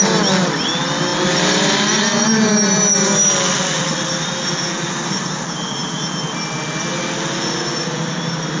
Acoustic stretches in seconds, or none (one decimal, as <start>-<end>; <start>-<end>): 0.0-8.6